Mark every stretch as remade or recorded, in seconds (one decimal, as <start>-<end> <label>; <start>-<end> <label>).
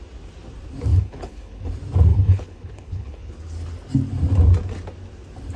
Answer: 0.0-0.9 recorded; 0.9-1.7 remade; 1.7-2.1 recorded; 2.1-3.3 remade; 3.3-5.6 recorded